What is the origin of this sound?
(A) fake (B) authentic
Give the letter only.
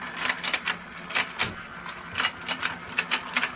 B